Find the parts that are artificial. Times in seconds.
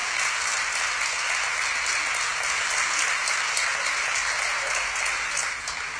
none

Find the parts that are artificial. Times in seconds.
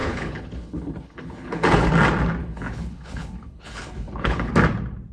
0.0-1.9 (codec, HILCodec); 2.4-4.5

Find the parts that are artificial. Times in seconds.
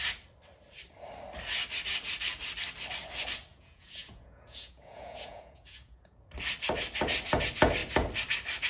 3.5-6.3 (vocoder, Vocos)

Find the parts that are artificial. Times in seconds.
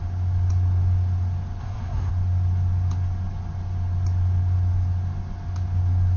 1.6-2.1 (codec, SNAC)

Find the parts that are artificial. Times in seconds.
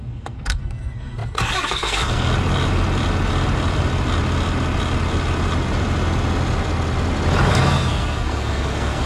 0.0-2.3 (codec, SNAC); 7.5-9.1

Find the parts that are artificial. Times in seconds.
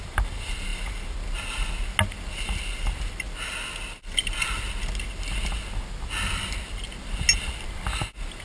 none